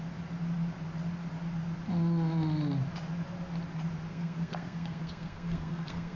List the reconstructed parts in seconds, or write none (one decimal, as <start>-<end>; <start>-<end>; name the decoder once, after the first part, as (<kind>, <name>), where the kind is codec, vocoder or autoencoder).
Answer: 4.1-6.2 (codec, SNAC)